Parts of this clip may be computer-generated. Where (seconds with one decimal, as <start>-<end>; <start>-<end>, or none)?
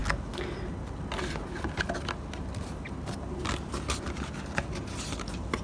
none